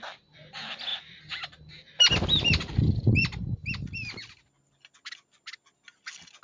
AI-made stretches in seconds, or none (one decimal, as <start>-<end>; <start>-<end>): none

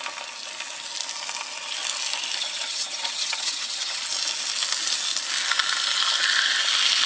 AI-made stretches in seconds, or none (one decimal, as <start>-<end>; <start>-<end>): 2.4-4.0

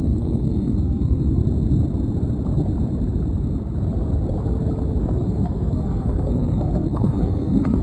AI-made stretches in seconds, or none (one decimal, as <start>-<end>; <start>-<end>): 0.0-1.4; 5.0-7.8